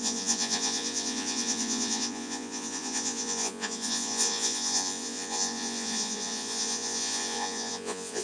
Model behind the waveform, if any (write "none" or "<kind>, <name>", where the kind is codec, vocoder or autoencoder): vocoder, Vocos